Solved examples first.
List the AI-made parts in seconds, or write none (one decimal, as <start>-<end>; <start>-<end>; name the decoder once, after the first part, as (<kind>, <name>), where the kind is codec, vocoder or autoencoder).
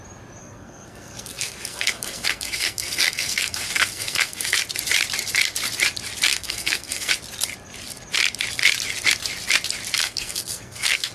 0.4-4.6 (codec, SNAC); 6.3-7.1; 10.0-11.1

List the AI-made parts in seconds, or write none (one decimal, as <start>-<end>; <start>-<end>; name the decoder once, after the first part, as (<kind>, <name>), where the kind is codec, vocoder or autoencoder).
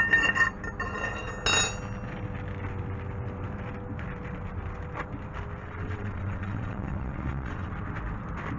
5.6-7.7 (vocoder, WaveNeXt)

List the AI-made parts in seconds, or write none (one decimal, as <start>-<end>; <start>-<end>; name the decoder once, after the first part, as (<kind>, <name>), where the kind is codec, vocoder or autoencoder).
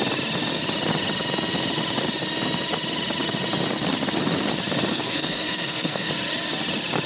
4.9-6.1 (codec, SNAC)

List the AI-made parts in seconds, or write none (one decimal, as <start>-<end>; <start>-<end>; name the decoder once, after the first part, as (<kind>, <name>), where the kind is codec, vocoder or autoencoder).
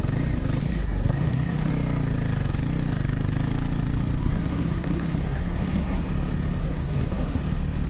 0.6-1.7 (codec, SNAC); 4.2-6.1; 6.6-7.4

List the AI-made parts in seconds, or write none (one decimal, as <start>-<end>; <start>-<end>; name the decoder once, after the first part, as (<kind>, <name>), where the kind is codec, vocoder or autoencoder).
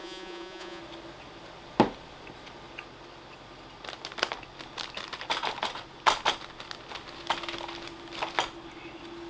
0.0-0.8 (vocoder, Vocos)